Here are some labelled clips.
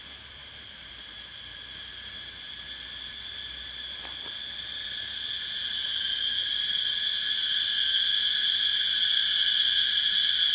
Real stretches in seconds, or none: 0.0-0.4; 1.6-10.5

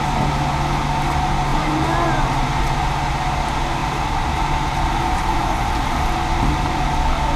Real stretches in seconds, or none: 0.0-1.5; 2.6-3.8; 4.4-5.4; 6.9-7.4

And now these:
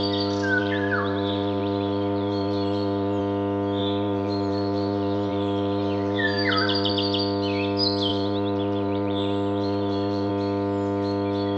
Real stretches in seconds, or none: 0.0-0.6; 3.2-3.8; 6.9-8.1; 10.3-11.6